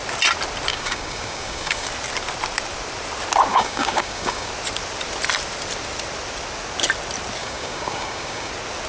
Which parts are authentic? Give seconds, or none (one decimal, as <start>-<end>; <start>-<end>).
0.0-0.7; 1.9-3.5; 4.5-7.4; 8.5-8.9